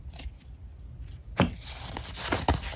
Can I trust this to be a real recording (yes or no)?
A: yes